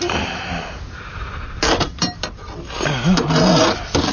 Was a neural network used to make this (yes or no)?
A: no